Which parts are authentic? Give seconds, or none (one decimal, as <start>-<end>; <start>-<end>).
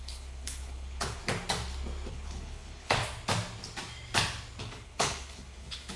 1.2-2.1; 3.0-4.6